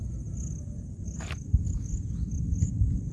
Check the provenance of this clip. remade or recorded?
recorded